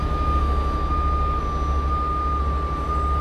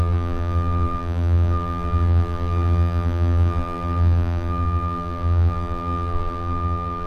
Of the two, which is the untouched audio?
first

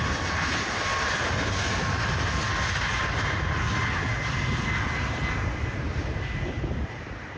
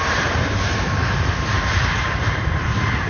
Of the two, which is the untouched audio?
first